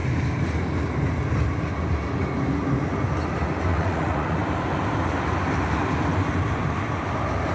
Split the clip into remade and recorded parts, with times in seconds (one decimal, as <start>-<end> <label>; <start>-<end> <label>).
0.0-3.7 recorded; 3.7-4.4 remade; 4.4-7.5 recorded